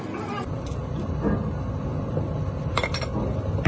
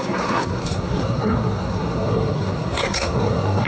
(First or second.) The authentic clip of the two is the first